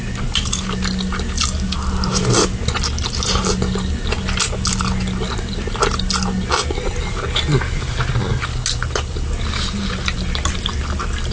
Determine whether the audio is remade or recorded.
recorded